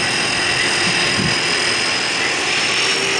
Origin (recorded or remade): recorded